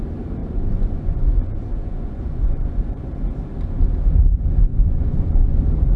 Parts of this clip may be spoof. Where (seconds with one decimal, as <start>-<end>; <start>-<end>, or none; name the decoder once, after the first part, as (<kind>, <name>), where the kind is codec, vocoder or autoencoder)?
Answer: 0.4-3.1 (vocoder, Vocos); 4.7-5.6